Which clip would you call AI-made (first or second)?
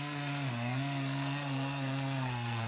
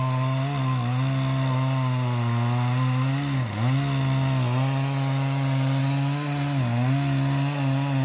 first